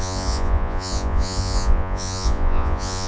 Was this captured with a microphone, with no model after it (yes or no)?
no